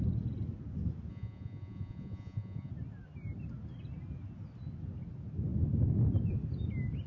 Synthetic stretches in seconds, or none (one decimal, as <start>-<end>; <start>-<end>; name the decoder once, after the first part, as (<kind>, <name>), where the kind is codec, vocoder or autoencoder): 1.1-2.7 (vocoder, Vocos)